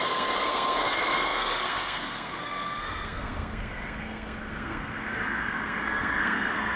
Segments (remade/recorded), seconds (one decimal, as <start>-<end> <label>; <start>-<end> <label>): 0.0-6.8 remade